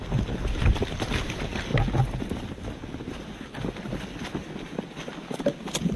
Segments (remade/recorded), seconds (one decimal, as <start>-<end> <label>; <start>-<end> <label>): 0.0-6.0 recorded